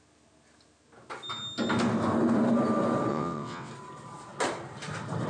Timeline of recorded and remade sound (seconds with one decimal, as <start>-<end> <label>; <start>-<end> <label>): 0.0-3.1 recorded; 3.1-3.7 remade; 3.7-5.3 recorded